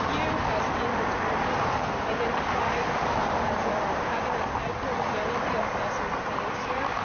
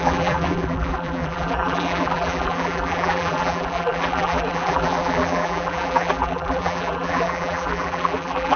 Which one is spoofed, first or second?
second